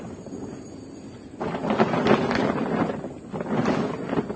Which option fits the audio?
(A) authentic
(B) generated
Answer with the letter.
A